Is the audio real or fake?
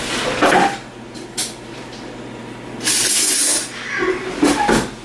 real